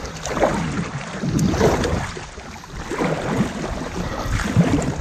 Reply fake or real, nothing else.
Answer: real